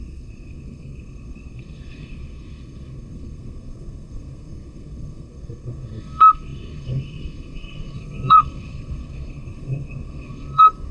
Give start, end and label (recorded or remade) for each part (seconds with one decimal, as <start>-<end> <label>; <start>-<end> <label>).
0.0-10.9 remade

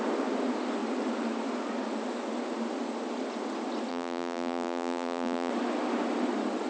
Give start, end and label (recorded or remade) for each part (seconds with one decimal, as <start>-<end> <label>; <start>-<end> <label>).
0.0-3.9 recorded; 3.9-5.5 remade; 5.5-6.7 recorded

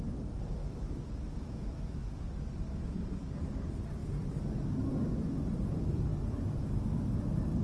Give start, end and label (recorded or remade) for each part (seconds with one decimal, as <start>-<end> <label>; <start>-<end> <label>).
0.0-0.6 recorded; 0.6-2.2 remade; 2.2-7.6 recorded